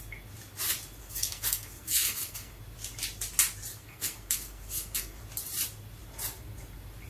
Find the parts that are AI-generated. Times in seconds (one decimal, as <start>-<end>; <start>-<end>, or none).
1.0-2.6; 3.7-5.2